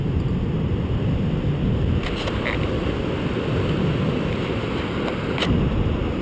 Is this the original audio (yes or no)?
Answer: yes